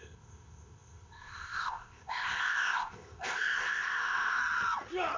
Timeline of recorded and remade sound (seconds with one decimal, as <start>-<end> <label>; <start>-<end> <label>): 0.0-4.4 remade; 4.4-5.2 recorded